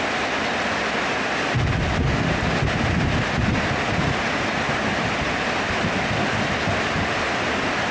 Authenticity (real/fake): real